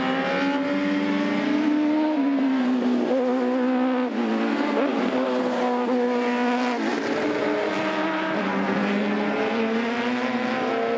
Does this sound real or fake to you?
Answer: real